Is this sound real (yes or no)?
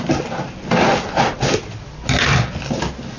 yes